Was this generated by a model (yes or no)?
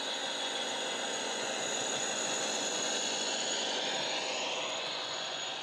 yes